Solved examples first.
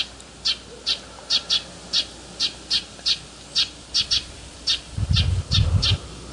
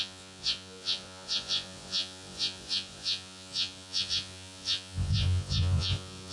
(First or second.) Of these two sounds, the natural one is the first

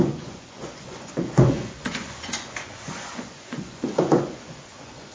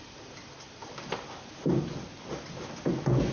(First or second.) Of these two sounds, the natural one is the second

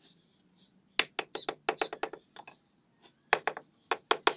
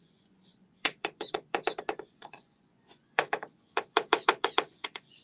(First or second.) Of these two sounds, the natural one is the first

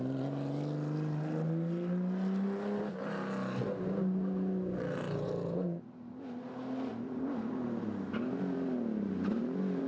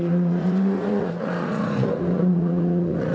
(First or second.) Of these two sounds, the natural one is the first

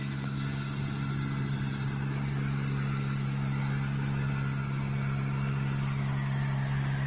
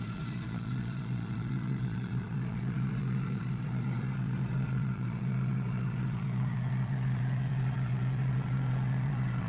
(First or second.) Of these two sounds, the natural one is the first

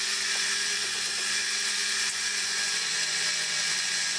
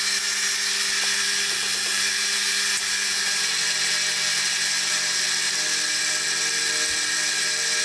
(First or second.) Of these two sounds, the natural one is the second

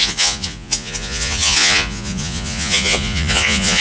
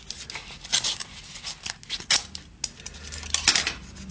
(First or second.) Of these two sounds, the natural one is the second